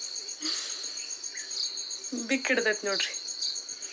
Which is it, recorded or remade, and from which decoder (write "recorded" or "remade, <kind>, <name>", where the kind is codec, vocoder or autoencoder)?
recorded